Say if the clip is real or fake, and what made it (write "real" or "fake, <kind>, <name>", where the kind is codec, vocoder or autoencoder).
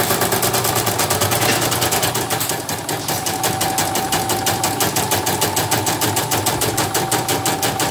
real